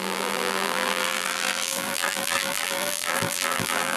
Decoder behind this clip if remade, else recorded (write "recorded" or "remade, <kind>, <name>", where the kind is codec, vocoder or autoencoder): remade, vocoder, BigVGAN v2